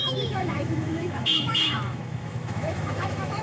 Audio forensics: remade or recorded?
remade